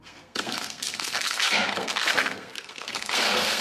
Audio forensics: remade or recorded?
remade